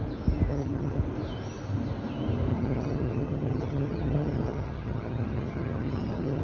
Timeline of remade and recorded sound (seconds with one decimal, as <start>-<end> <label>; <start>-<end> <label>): 0.0-0.5 recorded; 0.5-1.0 remade; 1.0-2.5 recorded; 2.5-6.4 remade